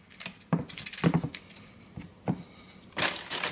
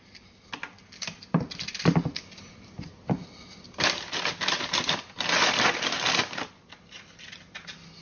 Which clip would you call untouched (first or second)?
second